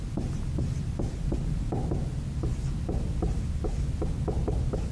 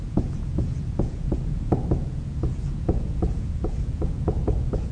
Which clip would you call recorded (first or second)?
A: first